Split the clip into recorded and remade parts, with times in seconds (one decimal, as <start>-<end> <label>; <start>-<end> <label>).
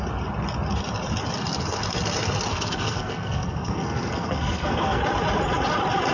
0.0-2.5 recorded; 2.5-5.0 remade; 5.0-6.1 recorded